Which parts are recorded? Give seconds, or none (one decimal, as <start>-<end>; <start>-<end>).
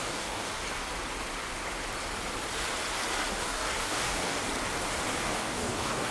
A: 0.6-3.3; 4.4-5.2